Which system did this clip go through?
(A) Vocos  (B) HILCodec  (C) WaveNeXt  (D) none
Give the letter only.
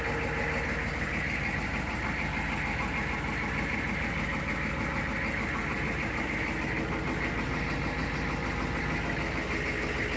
D